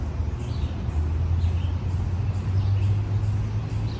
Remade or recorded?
recorded